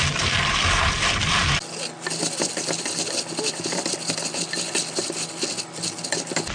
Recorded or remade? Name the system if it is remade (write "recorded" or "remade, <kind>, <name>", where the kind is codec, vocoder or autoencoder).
recorded